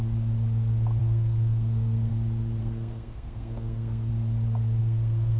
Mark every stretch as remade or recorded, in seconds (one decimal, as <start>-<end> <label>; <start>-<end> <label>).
0.0-1.0 recorded; 1.0-2.1 remade; 2.1-2.6 recorded; 2.6-4.1 remade; 4.1-4.8 recorded; 4.8-5.4 remade

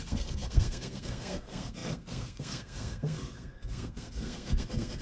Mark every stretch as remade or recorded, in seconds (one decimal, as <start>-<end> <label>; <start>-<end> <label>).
0.0-5.0 remade

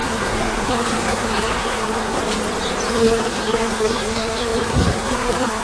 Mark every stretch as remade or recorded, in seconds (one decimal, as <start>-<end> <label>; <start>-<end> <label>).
0.0-2.2 remade; 2.2-2.9 recorded; 2.9-5.6 remade

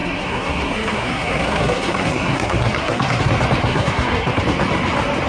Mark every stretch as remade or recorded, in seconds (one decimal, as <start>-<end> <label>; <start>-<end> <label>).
0.0-3.2 remade; 3.2-3.6 recorded; 3.6-4.4 remade; 4.4-5.3 recorded

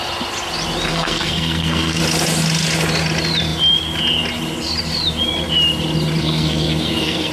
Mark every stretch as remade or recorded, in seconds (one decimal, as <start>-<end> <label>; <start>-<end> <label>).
0.0-0.9 recorded; 0.9-2.0 remade; 2.0-6.2 recorded; 6.2-7.3 remade

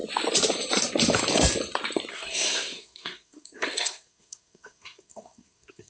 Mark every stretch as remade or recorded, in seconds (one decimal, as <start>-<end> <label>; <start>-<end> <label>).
0.0-2.1 recorded; 2.1-5.9 remade

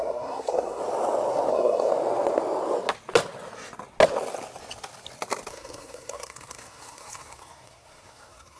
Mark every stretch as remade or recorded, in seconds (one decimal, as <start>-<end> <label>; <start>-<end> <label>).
0.0-0.8 remade; 0.8-1.5 recorded; 1.5-1.9 remade; 1.9-5.5 recorded; 5.5-8.6 remade